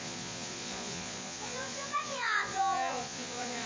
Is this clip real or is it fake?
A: fake